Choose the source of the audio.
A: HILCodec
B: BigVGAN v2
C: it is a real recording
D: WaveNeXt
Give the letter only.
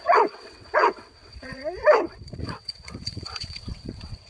D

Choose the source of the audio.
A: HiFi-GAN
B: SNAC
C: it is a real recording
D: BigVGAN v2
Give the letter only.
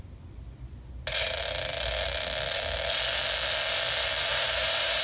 C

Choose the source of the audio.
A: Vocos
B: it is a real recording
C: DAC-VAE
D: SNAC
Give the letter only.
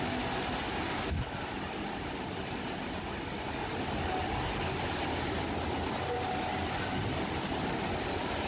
B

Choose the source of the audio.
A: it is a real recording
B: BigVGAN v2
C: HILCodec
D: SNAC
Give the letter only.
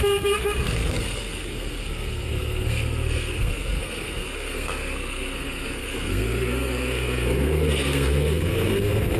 D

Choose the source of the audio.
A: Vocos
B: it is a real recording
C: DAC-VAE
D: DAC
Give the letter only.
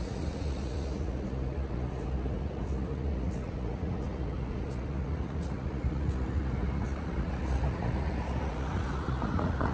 A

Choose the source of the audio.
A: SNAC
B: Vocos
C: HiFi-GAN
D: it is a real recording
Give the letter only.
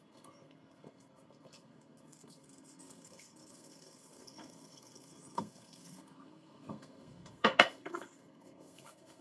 A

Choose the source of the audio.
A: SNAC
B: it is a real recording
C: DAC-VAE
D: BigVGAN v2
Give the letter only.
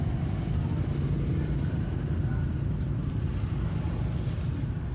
B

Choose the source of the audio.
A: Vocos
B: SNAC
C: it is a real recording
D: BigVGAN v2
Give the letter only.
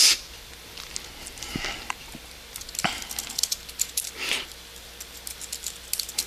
C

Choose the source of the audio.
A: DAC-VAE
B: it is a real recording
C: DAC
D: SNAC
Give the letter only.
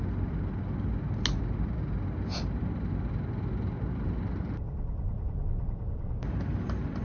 B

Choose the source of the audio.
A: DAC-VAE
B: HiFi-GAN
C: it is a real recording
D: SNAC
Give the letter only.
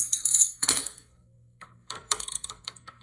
D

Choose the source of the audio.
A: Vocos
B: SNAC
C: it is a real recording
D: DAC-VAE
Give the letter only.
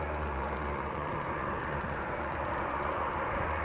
A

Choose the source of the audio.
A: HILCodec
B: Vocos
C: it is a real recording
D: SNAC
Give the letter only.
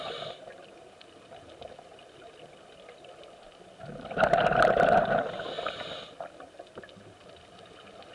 C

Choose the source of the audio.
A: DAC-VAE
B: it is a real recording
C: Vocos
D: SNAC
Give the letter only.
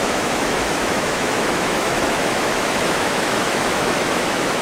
A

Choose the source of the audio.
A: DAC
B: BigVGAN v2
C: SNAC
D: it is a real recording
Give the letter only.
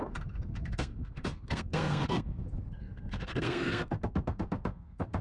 C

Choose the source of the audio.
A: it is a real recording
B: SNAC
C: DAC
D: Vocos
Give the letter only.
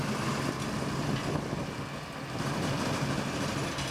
A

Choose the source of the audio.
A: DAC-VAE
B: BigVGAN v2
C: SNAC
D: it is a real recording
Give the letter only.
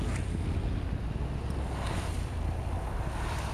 B